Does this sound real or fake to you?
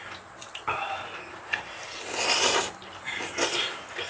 real